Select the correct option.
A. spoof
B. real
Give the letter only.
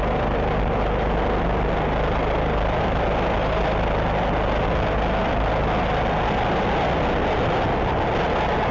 B